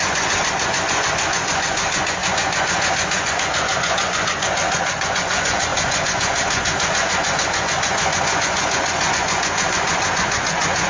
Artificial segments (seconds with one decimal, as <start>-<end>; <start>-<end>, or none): 0.0-10.9